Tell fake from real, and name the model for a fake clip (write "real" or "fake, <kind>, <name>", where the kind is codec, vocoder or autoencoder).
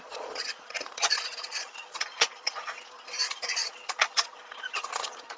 fake, vocoder, Vocos